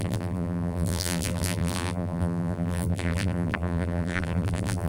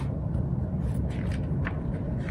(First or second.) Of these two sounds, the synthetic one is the first